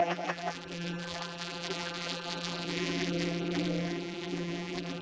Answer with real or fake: fake